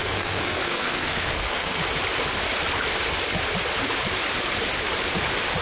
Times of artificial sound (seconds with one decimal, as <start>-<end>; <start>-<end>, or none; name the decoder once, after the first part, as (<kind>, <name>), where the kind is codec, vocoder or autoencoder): 0.0-1.8 (codec, SNAC)